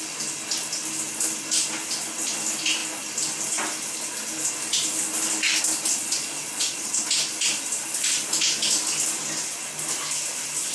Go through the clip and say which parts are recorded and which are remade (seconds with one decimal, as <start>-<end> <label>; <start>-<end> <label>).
0.0-6.0 recorded; 6.0-6.9 remade; 6.9-10.7 recorded